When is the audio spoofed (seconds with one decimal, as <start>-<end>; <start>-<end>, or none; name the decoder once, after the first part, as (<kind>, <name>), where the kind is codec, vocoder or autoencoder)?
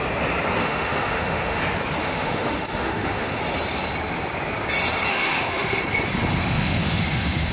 0.6-1.6 (autoencoder, DAC-VAE); 2.0-3.4; 5.1-5.8; 6.4-7.5